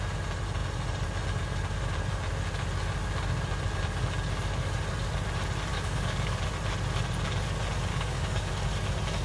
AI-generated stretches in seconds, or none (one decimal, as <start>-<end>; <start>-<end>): 5.7-6.4; 7.9-8.5